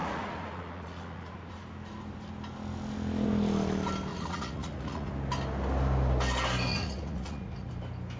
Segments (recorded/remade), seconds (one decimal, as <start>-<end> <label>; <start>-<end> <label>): 0.0-1.5 remade; 1.5-4.1 recorded; 4.1-5.1 remade; 5.1-6.7 recorded; 6.7-7.7 remade; 7.7-8.2 recorded